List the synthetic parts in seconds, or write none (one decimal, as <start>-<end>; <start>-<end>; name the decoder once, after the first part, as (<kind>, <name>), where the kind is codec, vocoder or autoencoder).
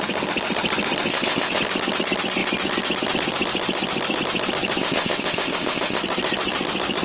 1.1-1.6 (codec, ZipCodec); 4.8-6.0